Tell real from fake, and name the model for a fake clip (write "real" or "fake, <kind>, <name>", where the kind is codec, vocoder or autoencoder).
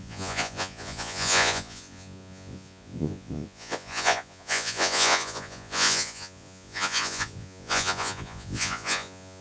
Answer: fake, vocoder, Vocos